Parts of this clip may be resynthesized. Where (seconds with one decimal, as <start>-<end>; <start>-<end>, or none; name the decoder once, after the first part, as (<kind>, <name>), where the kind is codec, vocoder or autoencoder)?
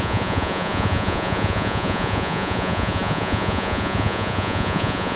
0.0-5.2 (vocoder, Vocos)